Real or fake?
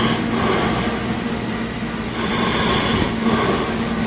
real